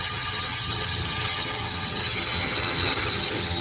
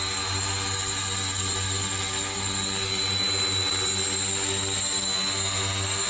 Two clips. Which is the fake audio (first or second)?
first